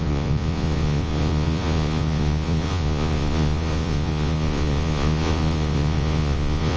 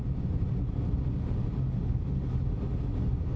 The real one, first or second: second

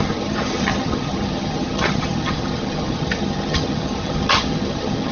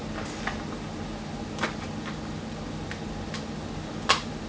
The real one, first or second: second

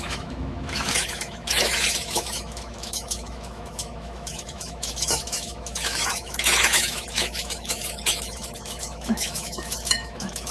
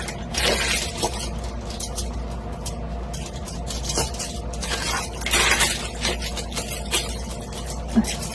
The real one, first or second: second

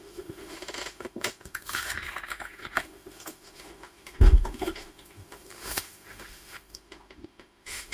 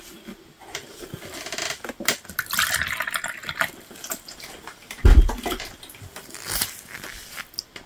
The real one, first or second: second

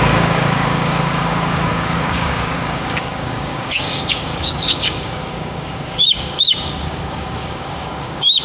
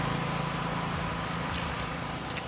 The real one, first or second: second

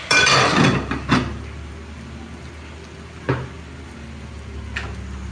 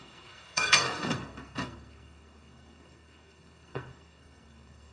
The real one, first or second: first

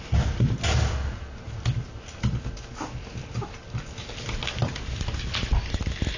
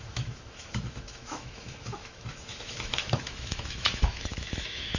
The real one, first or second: first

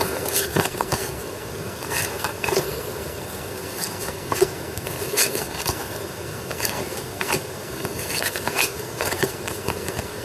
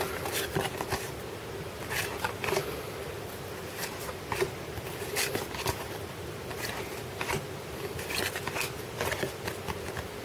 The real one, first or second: second